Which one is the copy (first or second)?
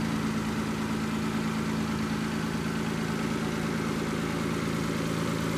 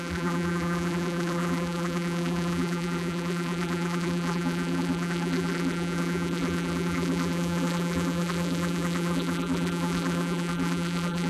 second